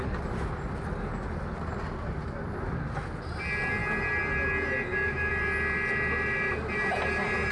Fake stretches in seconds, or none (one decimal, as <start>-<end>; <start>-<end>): none